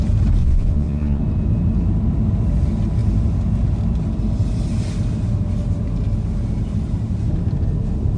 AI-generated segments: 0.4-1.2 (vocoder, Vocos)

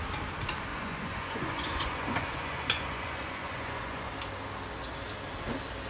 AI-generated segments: 0.7-4.1 (vocoder, Vocos)

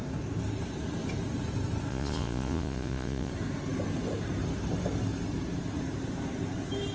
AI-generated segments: 1.9-3.3 (vocoder, Vocos)

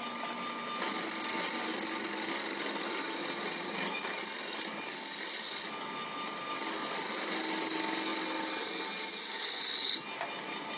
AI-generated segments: 3.2-4.1 (vocoder, Vocos)

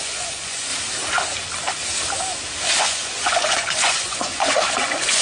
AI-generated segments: 0.0-0.7 (vocoder, Vocos); 2.8-5.2

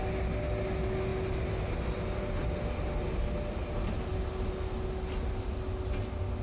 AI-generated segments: none

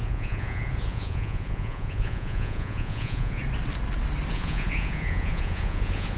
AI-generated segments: 0.0-3.4 (vocoder, Vocos); 4.3-6.2